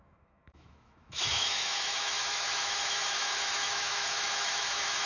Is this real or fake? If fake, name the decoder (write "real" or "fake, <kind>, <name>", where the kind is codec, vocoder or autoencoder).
fake, autoencoder, DAC-VAE